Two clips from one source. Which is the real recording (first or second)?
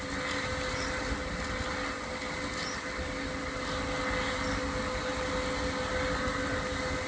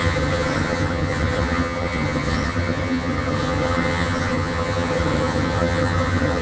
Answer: first